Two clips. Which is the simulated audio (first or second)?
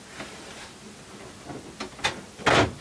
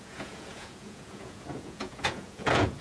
second